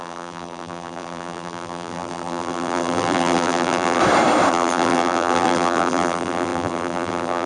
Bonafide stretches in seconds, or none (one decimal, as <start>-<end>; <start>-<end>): 4.0-4.5